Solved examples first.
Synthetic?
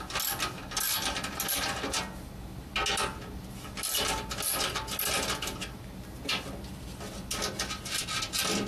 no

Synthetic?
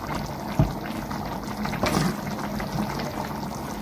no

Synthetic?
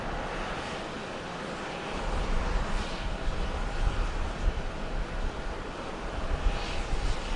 no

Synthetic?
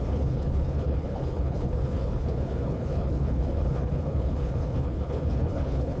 yes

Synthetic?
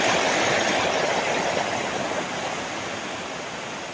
no